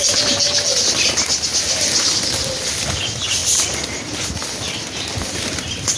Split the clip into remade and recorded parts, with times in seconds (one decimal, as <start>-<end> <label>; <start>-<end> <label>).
0.0-6.0 recorded